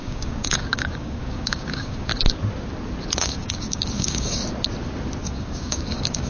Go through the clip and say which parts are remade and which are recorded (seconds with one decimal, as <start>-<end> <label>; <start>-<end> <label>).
0.0-2.1 remade; 2.1-3.2 recorded; 3.2-4.4 remade; 4.4-5.2 recorded; 5.2-6.3 remade